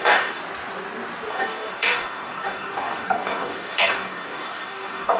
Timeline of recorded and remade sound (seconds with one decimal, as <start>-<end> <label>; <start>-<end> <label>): 0.0-0.4 remade; 0.4-1.3 recorded; 1.3-5.2 remade